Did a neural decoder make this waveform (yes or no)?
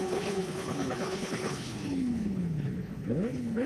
yes